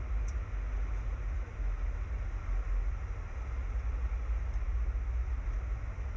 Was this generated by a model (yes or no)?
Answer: no